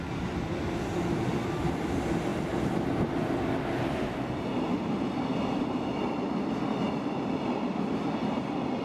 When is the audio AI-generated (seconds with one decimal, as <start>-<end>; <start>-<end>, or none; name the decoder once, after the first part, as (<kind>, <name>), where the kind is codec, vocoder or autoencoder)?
none